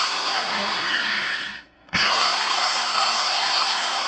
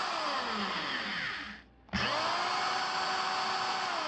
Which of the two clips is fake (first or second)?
first